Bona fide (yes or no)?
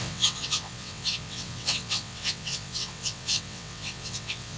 no